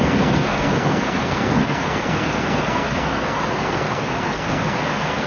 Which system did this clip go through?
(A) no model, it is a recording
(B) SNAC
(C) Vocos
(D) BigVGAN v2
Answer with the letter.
B